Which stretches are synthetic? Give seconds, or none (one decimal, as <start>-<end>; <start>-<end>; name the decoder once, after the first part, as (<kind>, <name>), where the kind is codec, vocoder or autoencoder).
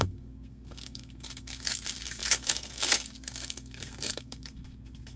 0.0-5.2 (codec, SNAC)